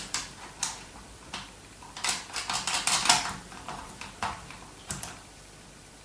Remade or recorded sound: remade